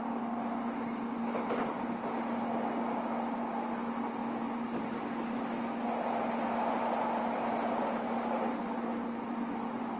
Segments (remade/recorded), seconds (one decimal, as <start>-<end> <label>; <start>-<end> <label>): 0.0-10.0 recorded